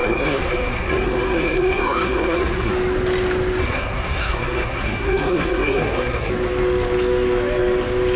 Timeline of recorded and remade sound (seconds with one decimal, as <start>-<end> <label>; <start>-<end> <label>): 0.0-2.7 remade; 2.7-3.6 recorded; 3.6-6.3 remade; 6.3-8.2 recorded